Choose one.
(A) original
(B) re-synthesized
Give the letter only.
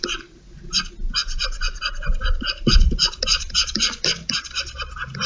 A